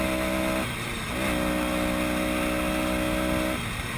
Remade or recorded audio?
recorded